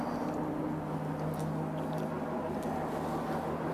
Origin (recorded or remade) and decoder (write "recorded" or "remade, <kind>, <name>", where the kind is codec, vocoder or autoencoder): recorded